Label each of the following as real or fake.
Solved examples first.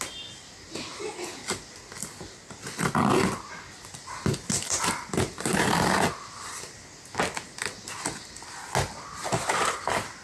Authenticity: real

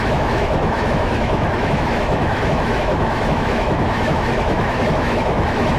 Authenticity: fake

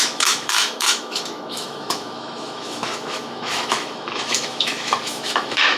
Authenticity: fake